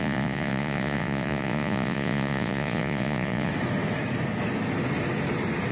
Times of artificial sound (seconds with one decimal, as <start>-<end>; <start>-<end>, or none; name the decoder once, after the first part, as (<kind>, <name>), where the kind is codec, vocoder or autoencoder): 0.0-3.5 (vocoder, Vocos)